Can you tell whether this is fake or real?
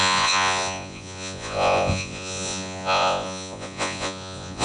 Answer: fake